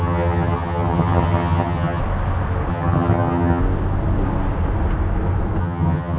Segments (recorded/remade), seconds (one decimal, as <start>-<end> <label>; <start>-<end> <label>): 0.0-2.0 remade; 2.0-2.7 recorded; 2.7-3.6 remade; 3.6-5.6 recorded; 5.6-6.2 remade